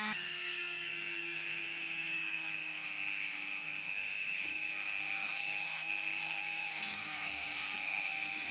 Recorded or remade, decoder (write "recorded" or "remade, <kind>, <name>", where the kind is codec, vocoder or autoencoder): remade, codec, SNAC